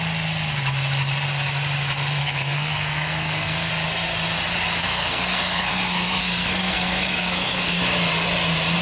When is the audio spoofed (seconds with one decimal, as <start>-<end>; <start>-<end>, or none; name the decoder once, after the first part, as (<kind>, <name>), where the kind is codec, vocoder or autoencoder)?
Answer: 2.2-3.7 (codec, SNAC); 4.8-7.8